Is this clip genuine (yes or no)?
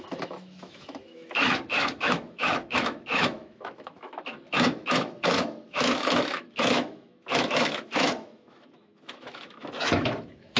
no